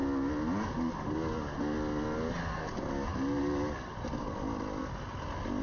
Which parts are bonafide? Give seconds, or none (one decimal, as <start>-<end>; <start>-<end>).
0.0-5.6